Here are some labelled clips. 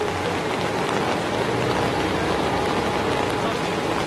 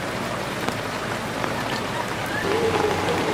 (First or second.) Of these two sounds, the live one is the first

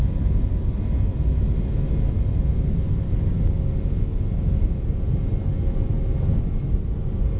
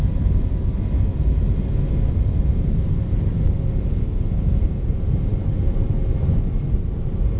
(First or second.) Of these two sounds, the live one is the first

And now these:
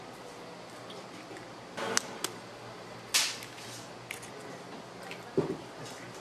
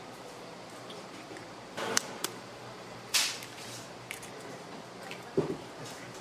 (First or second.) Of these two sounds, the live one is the first